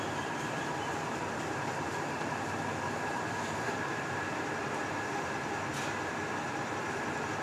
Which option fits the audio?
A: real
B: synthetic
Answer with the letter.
A